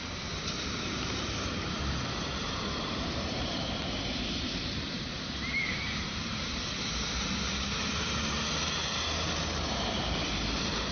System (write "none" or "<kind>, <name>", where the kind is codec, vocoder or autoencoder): vocoder, BigVGAN v2